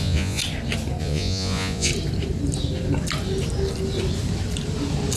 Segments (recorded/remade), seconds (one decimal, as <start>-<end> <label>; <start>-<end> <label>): 0.0-0.4 remade; 0.4-1.0 recorded; 1.0-1.9 remade; 1.9-5.2 recorded